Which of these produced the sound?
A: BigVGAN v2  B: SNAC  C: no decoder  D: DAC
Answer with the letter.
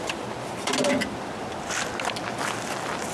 C